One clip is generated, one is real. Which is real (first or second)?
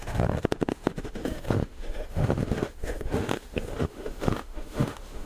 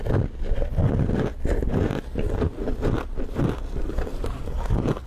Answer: second